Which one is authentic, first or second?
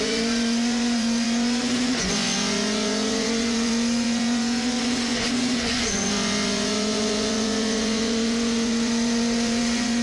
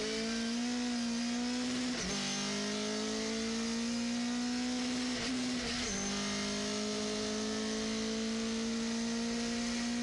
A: second